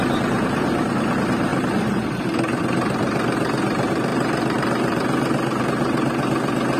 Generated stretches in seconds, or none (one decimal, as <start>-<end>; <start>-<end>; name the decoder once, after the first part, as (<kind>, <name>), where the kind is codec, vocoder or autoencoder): 0.0-6.8 (vocoder, BigVGAN v2)

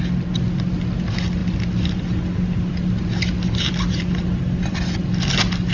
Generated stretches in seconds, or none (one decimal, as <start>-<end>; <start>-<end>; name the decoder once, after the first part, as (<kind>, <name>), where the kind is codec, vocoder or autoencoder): none